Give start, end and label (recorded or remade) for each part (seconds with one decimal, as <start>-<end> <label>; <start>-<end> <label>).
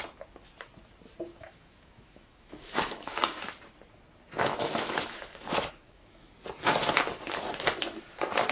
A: 0.0-1.3 recorded; 1.3-3.4 remade; 3.4-4.5 recorded; 4.5-6.3 remade; 6.3-8.5 recorded